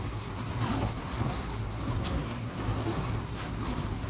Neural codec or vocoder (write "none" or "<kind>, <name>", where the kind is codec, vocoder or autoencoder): codec, SNAC